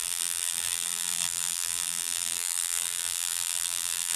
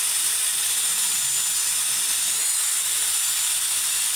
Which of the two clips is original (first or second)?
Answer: second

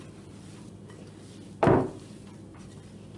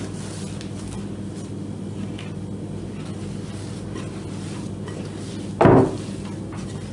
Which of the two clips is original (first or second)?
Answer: second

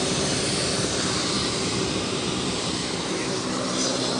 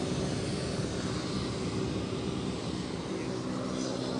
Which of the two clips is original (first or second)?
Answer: second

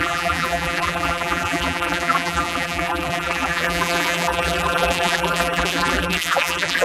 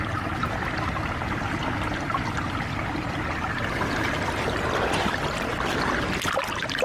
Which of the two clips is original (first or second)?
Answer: second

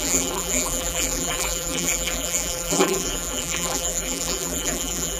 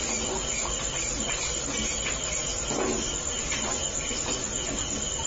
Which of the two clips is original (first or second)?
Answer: second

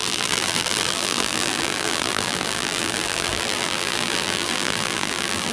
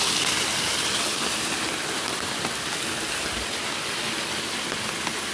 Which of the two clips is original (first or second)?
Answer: second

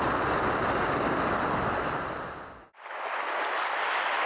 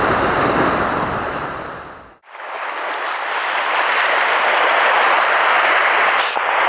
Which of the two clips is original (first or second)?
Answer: first